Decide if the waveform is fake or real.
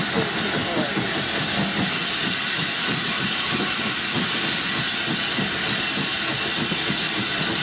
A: real